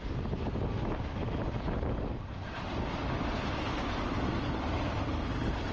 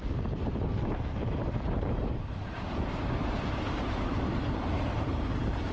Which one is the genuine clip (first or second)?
first